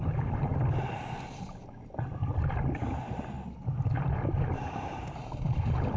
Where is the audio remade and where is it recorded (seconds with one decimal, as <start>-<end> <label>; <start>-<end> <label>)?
0.0-0.5 remade; 0.5-2.5 recorded; 2.5-2.9 remade; 2.9-4.1 recorded; 4.1-6.0 remade

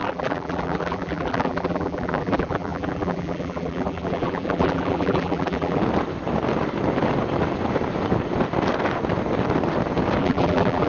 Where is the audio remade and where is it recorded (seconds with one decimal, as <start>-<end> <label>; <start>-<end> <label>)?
0.0-5.8 remade; 5.8-10.2 recorded; 10.2-10.9 remade

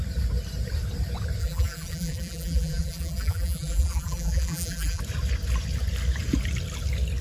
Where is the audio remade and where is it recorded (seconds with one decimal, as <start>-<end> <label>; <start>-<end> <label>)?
0.0-1.4 recorded; 1.4-5.0 remade; 5.0-7.2 recorded

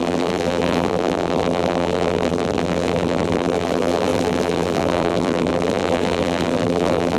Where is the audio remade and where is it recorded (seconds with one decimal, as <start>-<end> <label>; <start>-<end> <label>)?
0.0-7.2 remade

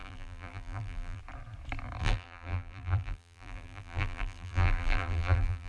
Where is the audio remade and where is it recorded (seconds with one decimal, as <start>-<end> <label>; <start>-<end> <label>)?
0.0-1.2 remade; 1.2-2.0 recorded; 2.0-5.7 remade

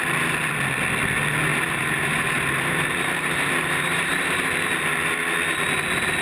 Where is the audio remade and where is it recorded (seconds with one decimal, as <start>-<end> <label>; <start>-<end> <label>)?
0.0-1.5 recorded; 1.5-4.7 remade; 4.7-6.2 recorded

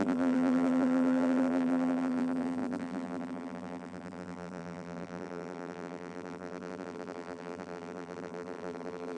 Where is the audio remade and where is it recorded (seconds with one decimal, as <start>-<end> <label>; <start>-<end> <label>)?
0.0-9.2 remade

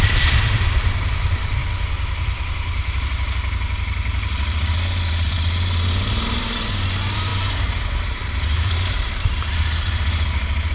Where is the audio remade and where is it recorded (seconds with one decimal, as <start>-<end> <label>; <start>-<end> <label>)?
0.0-1.6 remade; 1.6-5.1 recorded; 5.1-10.7 remade